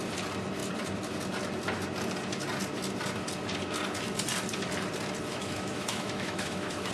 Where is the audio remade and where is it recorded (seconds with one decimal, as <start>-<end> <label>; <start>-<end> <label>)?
0.0-5.3 recorded; 5.3-6.9 remade

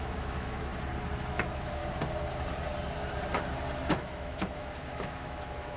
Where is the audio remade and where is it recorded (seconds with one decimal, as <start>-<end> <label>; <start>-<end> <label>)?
0.0-0.7 remade; 0.7-1.3 recorded; 1.3-1.8 remade; 1.8-3.9 recorded; 3.9-5.8 remade

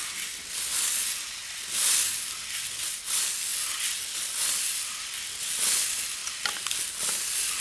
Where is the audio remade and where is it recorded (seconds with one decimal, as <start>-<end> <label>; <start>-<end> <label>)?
0.0-7.6 recorded

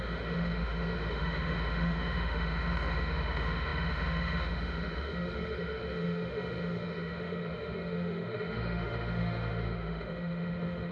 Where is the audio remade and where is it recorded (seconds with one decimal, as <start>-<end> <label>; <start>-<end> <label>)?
0.0-10.9 remade

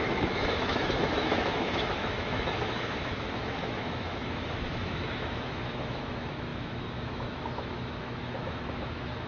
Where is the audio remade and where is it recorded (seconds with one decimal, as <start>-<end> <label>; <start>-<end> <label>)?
0.0-9.3 remade

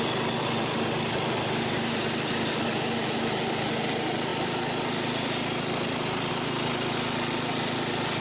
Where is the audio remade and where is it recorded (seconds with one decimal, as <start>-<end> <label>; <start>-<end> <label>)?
0.0-8.2 recorded

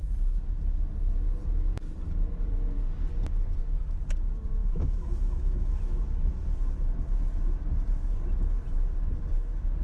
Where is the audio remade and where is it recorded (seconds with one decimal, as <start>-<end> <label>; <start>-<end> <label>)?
0.0-4.6 recorded; 4.6-5.8 remade; 5.8-9.8 recorded

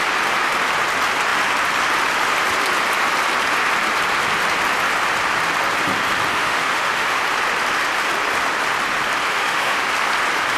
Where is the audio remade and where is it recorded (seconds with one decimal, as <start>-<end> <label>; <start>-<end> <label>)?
0.0-6.3 recorded; 6.3-7.2 remade; 7.2-9.3 recorded; 9.3-9.9 remade; 9.9-10.6 recorded